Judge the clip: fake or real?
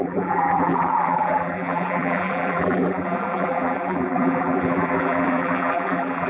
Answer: fake